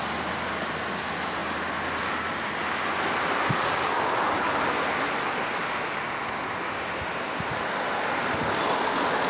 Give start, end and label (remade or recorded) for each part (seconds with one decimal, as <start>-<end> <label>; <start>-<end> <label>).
0.0-9.3 recorded